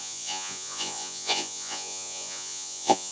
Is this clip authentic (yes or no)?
no